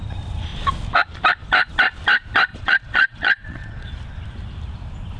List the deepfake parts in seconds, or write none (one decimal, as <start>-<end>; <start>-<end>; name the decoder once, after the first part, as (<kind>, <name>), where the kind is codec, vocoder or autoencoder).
2.5-3.9 (vocoder, Vocos)